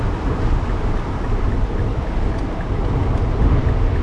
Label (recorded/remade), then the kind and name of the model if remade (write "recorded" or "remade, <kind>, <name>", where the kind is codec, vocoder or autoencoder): recorded